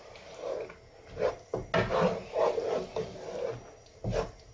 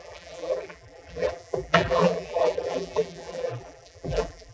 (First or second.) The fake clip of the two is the second